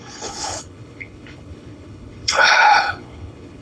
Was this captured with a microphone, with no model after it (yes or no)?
no